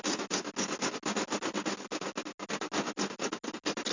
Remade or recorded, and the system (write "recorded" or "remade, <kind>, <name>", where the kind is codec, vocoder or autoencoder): recorded